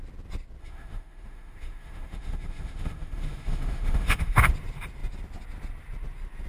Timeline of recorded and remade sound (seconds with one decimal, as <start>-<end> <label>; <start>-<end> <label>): 0.0-0.6 recorded; 0.6-4.5 remade; 4.5-6.5 recorded